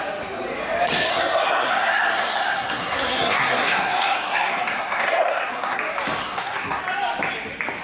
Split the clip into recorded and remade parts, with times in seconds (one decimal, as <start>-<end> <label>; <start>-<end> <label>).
0.0-1.1 recorded; 1.1-5.8 remade; 5.8-6.2 recorded; 6.2-6.8 remade; 6.8-7.8 recorded